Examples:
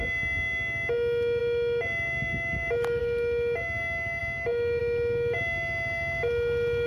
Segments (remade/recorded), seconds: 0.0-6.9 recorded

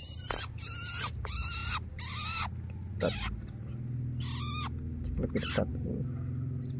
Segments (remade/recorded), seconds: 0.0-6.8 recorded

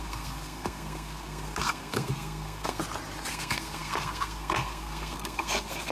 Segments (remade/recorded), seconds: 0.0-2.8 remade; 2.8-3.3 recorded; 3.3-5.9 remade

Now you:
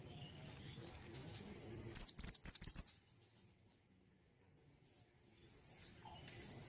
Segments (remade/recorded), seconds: 0.0-6.7 recorded

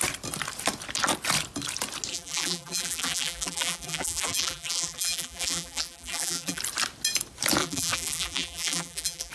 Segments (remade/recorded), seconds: 0.0-2.1 recorded; 2.1-6.6 remade; 6.6-7.6 recorded; 7.6-9.3 remade

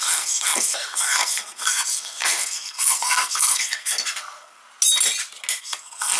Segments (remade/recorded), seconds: 0.0-4.6 remade; 4.6-5.6 recorded; 5.6-6.2 remade